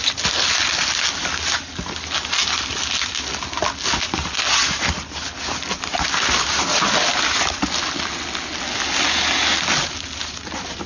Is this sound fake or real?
real